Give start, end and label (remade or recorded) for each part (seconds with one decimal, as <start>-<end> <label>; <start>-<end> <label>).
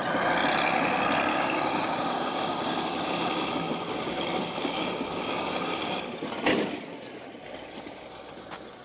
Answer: 0.0-1.3 recorded; 1.3-6.0 remade; 6.0-8.8 recorded